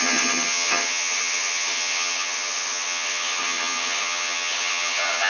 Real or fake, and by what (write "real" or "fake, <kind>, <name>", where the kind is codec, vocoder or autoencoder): fake, vocoder, HiFi-GAN